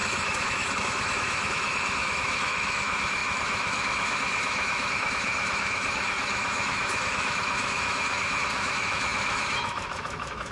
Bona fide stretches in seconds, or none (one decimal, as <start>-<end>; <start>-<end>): none